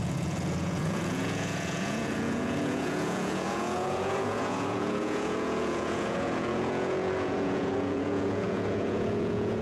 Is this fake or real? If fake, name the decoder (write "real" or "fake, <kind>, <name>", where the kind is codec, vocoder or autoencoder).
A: fake, vocoder, Vocos